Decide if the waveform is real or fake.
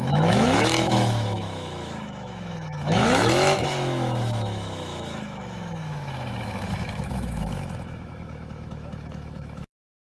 fake